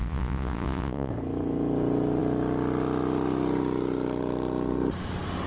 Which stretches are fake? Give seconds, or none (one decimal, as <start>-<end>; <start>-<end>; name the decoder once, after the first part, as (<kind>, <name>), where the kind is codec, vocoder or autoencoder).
0.0-1.1 (vocoder, Vocos)